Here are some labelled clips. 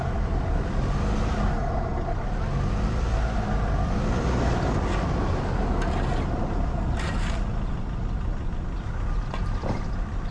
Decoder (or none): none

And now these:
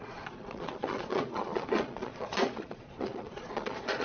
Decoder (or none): vocoder, Vocos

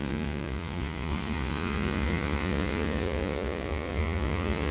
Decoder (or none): vocoder, Vocos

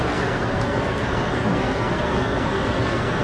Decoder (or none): codec, SNAC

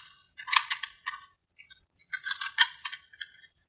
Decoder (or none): vocoder, Vocos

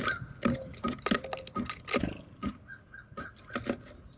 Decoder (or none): none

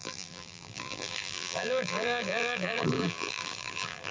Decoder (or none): vocoder, BigVGAN v2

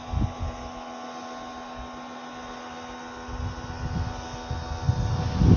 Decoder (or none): none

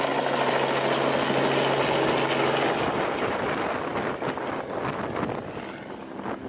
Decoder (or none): none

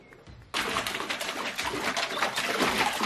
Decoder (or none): none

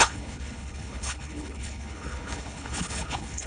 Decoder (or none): codec, HILCodec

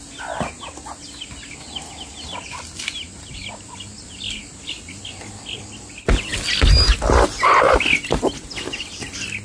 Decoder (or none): none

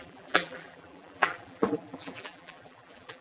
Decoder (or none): vocoder, BigVGAN v2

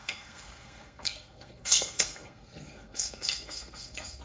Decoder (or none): codec, SNAC